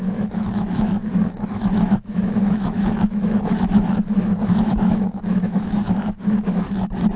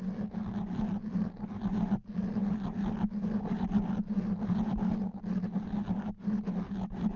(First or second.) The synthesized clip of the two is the first